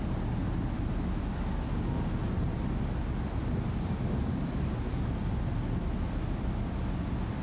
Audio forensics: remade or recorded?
recorded